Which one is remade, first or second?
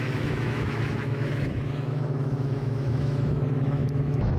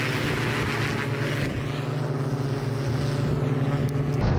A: first